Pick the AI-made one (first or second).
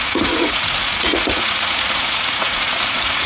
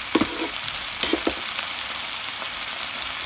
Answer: first